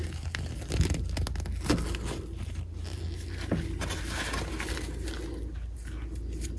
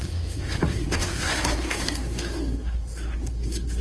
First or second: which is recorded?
first